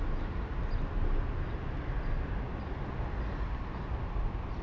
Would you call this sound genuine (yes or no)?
yes